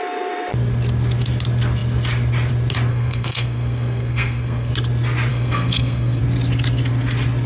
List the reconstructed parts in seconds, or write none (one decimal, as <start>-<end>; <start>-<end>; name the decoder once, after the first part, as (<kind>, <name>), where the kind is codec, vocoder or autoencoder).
2.9-4.7 (codec, SNAC); 5.3-6.2